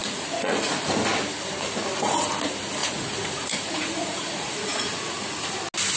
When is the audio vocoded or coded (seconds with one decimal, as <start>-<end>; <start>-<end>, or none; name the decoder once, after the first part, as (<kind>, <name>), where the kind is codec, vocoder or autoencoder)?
0.0-0.9 (vocoder, Vocos); 2.8-5.6